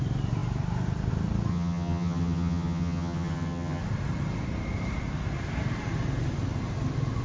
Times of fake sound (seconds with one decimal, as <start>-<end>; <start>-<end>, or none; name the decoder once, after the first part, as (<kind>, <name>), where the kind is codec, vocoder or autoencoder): 1.5-3.8 (vocoder, HiFi-GAN)